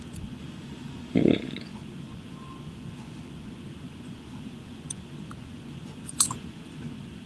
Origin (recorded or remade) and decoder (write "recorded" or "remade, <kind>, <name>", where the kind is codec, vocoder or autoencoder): remade, vocoder, Vocos